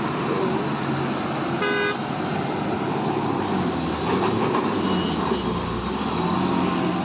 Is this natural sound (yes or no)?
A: yes